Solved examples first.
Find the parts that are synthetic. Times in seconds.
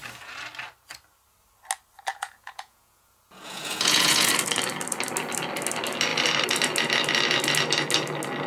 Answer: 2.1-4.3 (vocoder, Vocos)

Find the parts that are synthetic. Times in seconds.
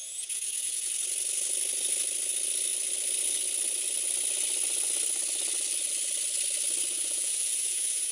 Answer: 0.0-0.9 (vocoder, Vocos); 6.9-8.1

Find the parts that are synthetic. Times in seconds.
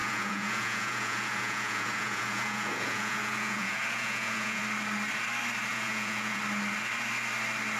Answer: 0.0-4.6 (vocoder, Vocos); 5.7-6.4